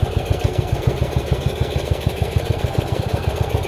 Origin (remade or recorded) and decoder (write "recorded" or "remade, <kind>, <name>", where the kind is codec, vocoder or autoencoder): remade, codec, SNAC